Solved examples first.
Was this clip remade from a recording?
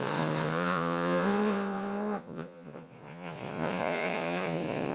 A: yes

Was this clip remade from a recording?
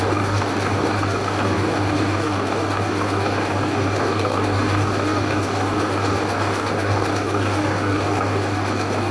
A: yes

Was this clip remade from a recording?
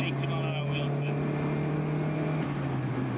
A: no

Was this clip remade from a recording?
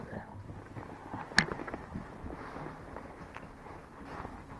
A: no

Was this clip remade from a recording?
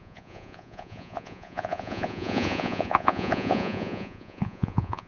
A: yes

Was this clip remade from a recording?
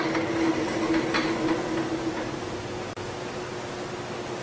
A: no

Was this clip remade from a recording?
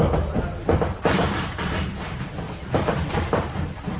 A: no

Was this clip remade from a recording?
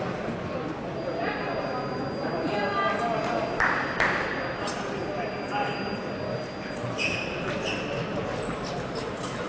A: no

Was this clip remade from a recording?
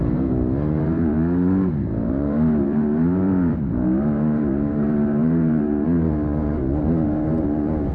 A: yes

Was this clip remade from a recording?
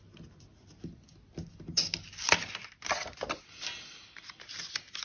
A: no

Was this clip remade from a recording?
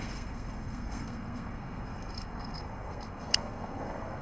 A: yes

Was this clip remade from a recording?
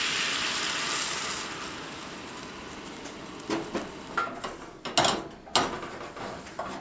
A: no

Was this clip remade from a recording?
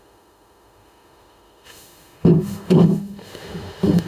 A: yes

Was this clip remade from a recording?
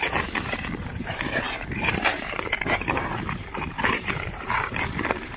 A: yes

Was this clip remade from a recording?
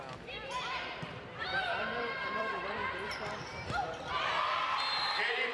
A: yes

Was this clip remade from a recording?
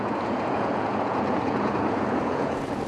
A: yes